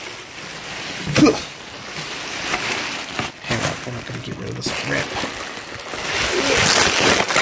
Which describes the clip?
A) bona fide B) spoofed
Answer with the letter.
A